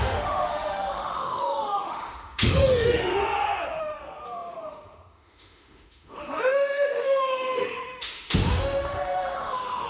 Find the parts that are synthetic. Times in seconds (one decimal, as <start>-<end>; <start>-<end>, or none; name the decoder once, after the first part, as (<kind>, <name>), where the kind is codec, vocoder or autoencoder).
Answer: 0.0-3.2 (autoencoder, DAC-VAE); 3.8-9.9